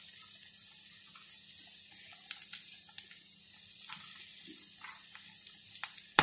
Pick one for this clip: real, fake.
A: real